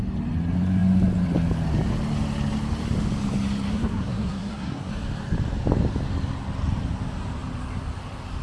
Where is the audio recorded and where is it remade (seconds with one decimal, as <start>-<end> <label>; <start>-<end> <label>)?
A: 0.0-3.7 recorded; 3.7-4.9 remade; 4.9-8.4 recorded